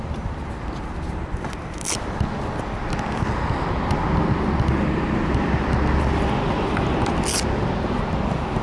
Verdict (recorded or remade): recorded